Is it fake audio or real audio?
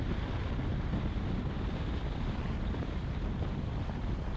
fake